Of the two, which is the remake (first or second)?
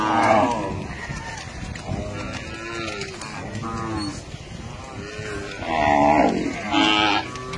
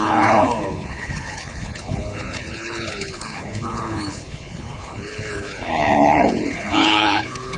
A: second